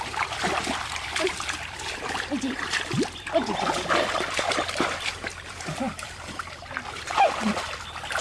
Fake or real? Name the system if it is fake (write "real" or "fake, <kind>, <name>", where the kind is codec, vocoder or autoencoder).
fake, vocoder, BigVGAN v2